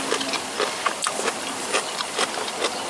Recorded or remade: recorded